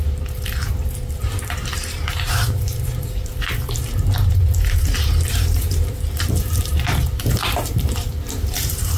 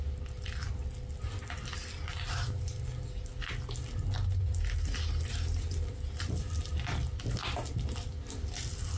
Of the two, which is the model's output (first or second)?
first